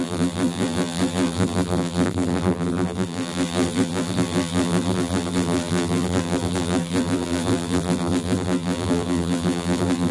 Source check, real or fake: fake